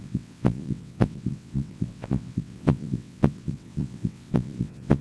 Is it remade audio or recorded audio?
remade